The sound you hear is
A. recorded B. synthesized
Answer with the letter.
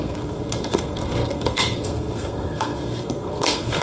B